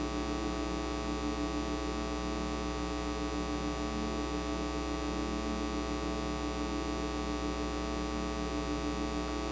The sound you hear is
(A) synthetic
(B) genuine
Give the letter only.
B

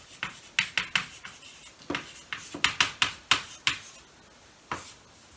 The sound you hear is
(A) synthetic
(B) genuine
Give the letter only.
B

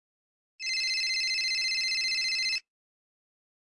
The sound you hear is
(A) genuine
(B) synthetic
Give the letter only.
A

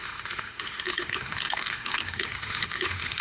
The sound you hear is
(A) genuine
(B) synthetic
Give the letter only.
B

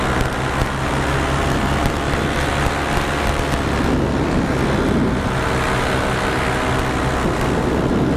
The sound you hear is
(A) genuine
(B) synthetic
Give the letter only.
A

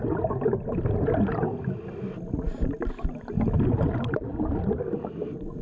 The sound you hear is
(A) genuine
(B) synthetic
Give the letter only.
A